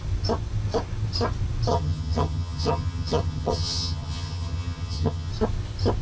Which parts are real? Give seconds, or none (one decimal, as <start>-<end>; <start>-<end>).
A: 0.0-1.7; 5.3-6.0

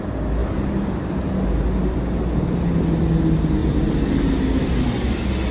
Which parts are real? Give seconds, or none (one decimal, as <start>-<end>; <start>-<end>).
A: 0.0-5.5

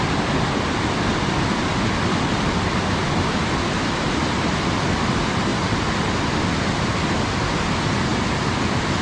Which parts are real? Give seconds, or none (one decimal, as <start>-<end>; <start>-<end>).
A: 0.0-9.0

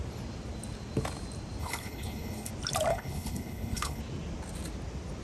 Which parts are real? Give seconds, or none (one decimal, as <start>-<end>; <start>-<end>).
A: 0.0-1.6; 2.5-2.9; 4.0-5.2